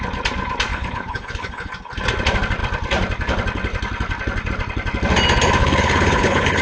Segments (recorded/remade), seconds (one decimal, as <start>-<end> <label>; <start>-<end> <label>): 0.0-0.7 recorded; 0.7-1.7 remade; 1.7-5.6 recorded; 5.6-6.6 remade